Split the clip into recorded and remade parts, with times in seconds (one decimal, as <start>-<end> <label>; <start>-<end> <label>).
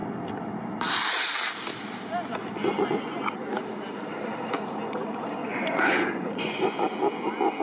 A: 0.0-2.7 recorded; 2.7-3.3 remade; 3.3-5.4 recorded; 5.4-6.8 remade; 6.8-7.6 recorded